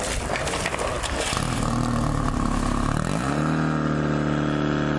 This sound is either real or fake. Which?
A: real